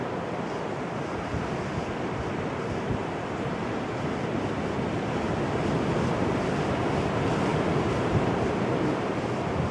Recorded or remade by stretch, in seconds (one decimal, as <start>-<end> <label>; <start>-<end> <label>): 0.0-7.5 recorded; 7.5-9.1 remade; 9.1-9.7 recorded